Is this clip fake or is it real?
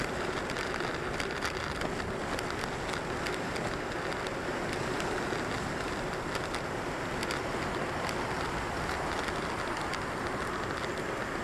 real